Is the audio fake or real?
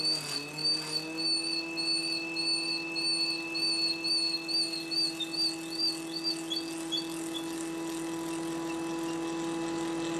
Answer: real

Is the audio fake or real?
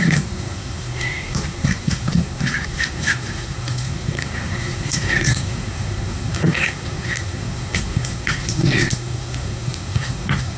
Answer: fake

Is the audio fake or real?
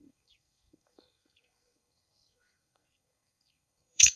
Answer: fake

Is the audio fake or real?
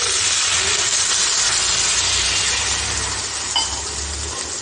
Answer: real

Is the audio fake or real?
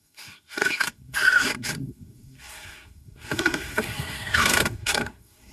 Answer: fake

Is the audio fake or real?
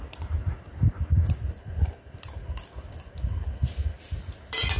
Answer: real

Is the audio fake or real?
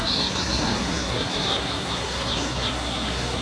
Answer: fake